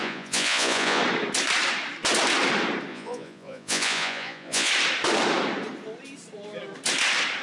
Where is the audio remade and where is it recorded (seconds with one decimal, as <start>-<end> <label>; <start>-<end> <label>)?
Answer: 0.0-1.0 remade; 1.0-2.9 recorded; 2.9-4.7 remade; 4.7-7.4 recorded